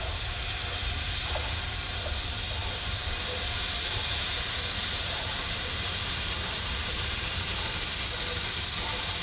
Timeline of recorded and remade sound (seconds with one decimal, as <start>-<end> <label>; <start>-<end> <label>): 0.0-2.6 recorded; 2.6-7.7 remade; 7.7-9.2 recorded